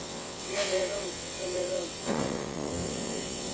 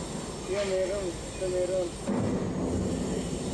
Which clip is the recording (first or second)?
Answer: second